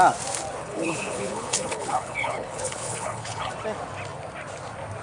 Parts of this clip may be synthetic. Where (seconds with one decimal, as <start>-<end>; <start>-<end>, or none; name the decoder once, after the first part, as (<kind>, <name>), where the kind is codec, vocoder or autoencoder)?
0.6-3.5 (codec, HILCodec)